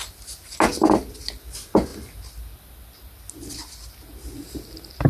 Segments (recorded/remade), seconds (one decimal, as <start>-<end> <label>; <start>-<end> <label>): 0.0-5.1 recorded